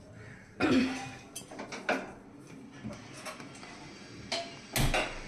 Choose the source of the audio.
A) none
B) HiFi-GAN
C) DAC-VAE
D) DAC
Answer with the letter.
A